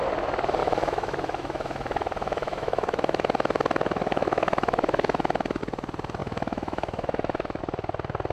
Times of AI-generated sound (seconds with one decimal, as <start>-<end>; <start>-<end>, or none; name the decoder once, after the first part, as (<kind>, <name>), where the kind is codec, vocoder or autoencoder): 0.6-5.6 (autoencoder, DAC-VAE); 6.2-7.6